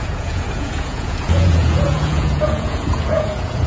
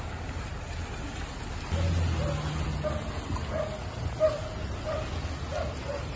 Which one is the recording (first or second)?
second